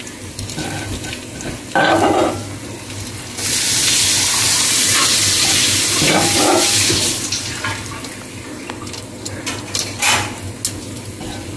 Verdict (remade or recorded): recorded